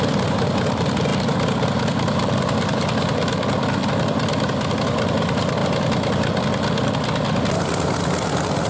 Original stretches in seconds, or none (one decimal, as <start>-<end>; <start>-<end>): 0.0-8.7